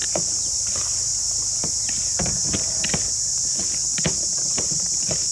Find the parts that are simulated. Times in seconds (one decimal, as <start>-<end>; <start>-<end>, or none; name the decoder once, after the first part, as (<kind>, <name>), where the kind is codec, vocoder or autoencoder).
none